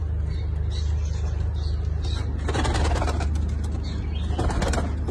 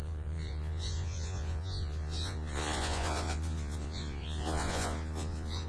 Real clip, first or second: first